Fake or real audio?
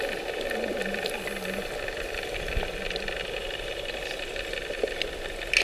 real